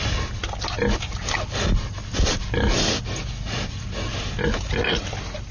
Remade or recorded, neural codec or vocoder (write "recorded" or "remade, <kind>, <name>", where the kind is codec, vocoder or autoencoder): recorded